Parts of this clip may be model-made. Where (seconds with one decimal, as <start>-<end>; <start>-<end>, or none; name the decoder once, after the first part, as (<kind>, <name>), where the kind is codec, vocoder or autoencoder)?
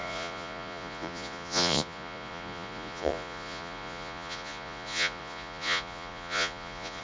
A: 0.0-7.0 (vocoder, Vocos)